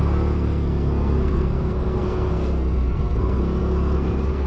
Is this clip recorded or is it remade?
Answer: remade